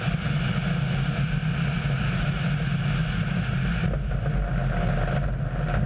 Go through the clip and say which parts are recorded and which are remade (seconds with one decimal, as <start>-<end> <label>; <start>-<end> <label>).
0.0-5.9 recorded